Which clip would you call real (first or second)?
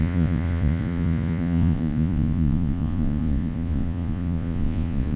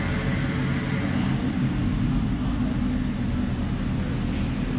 second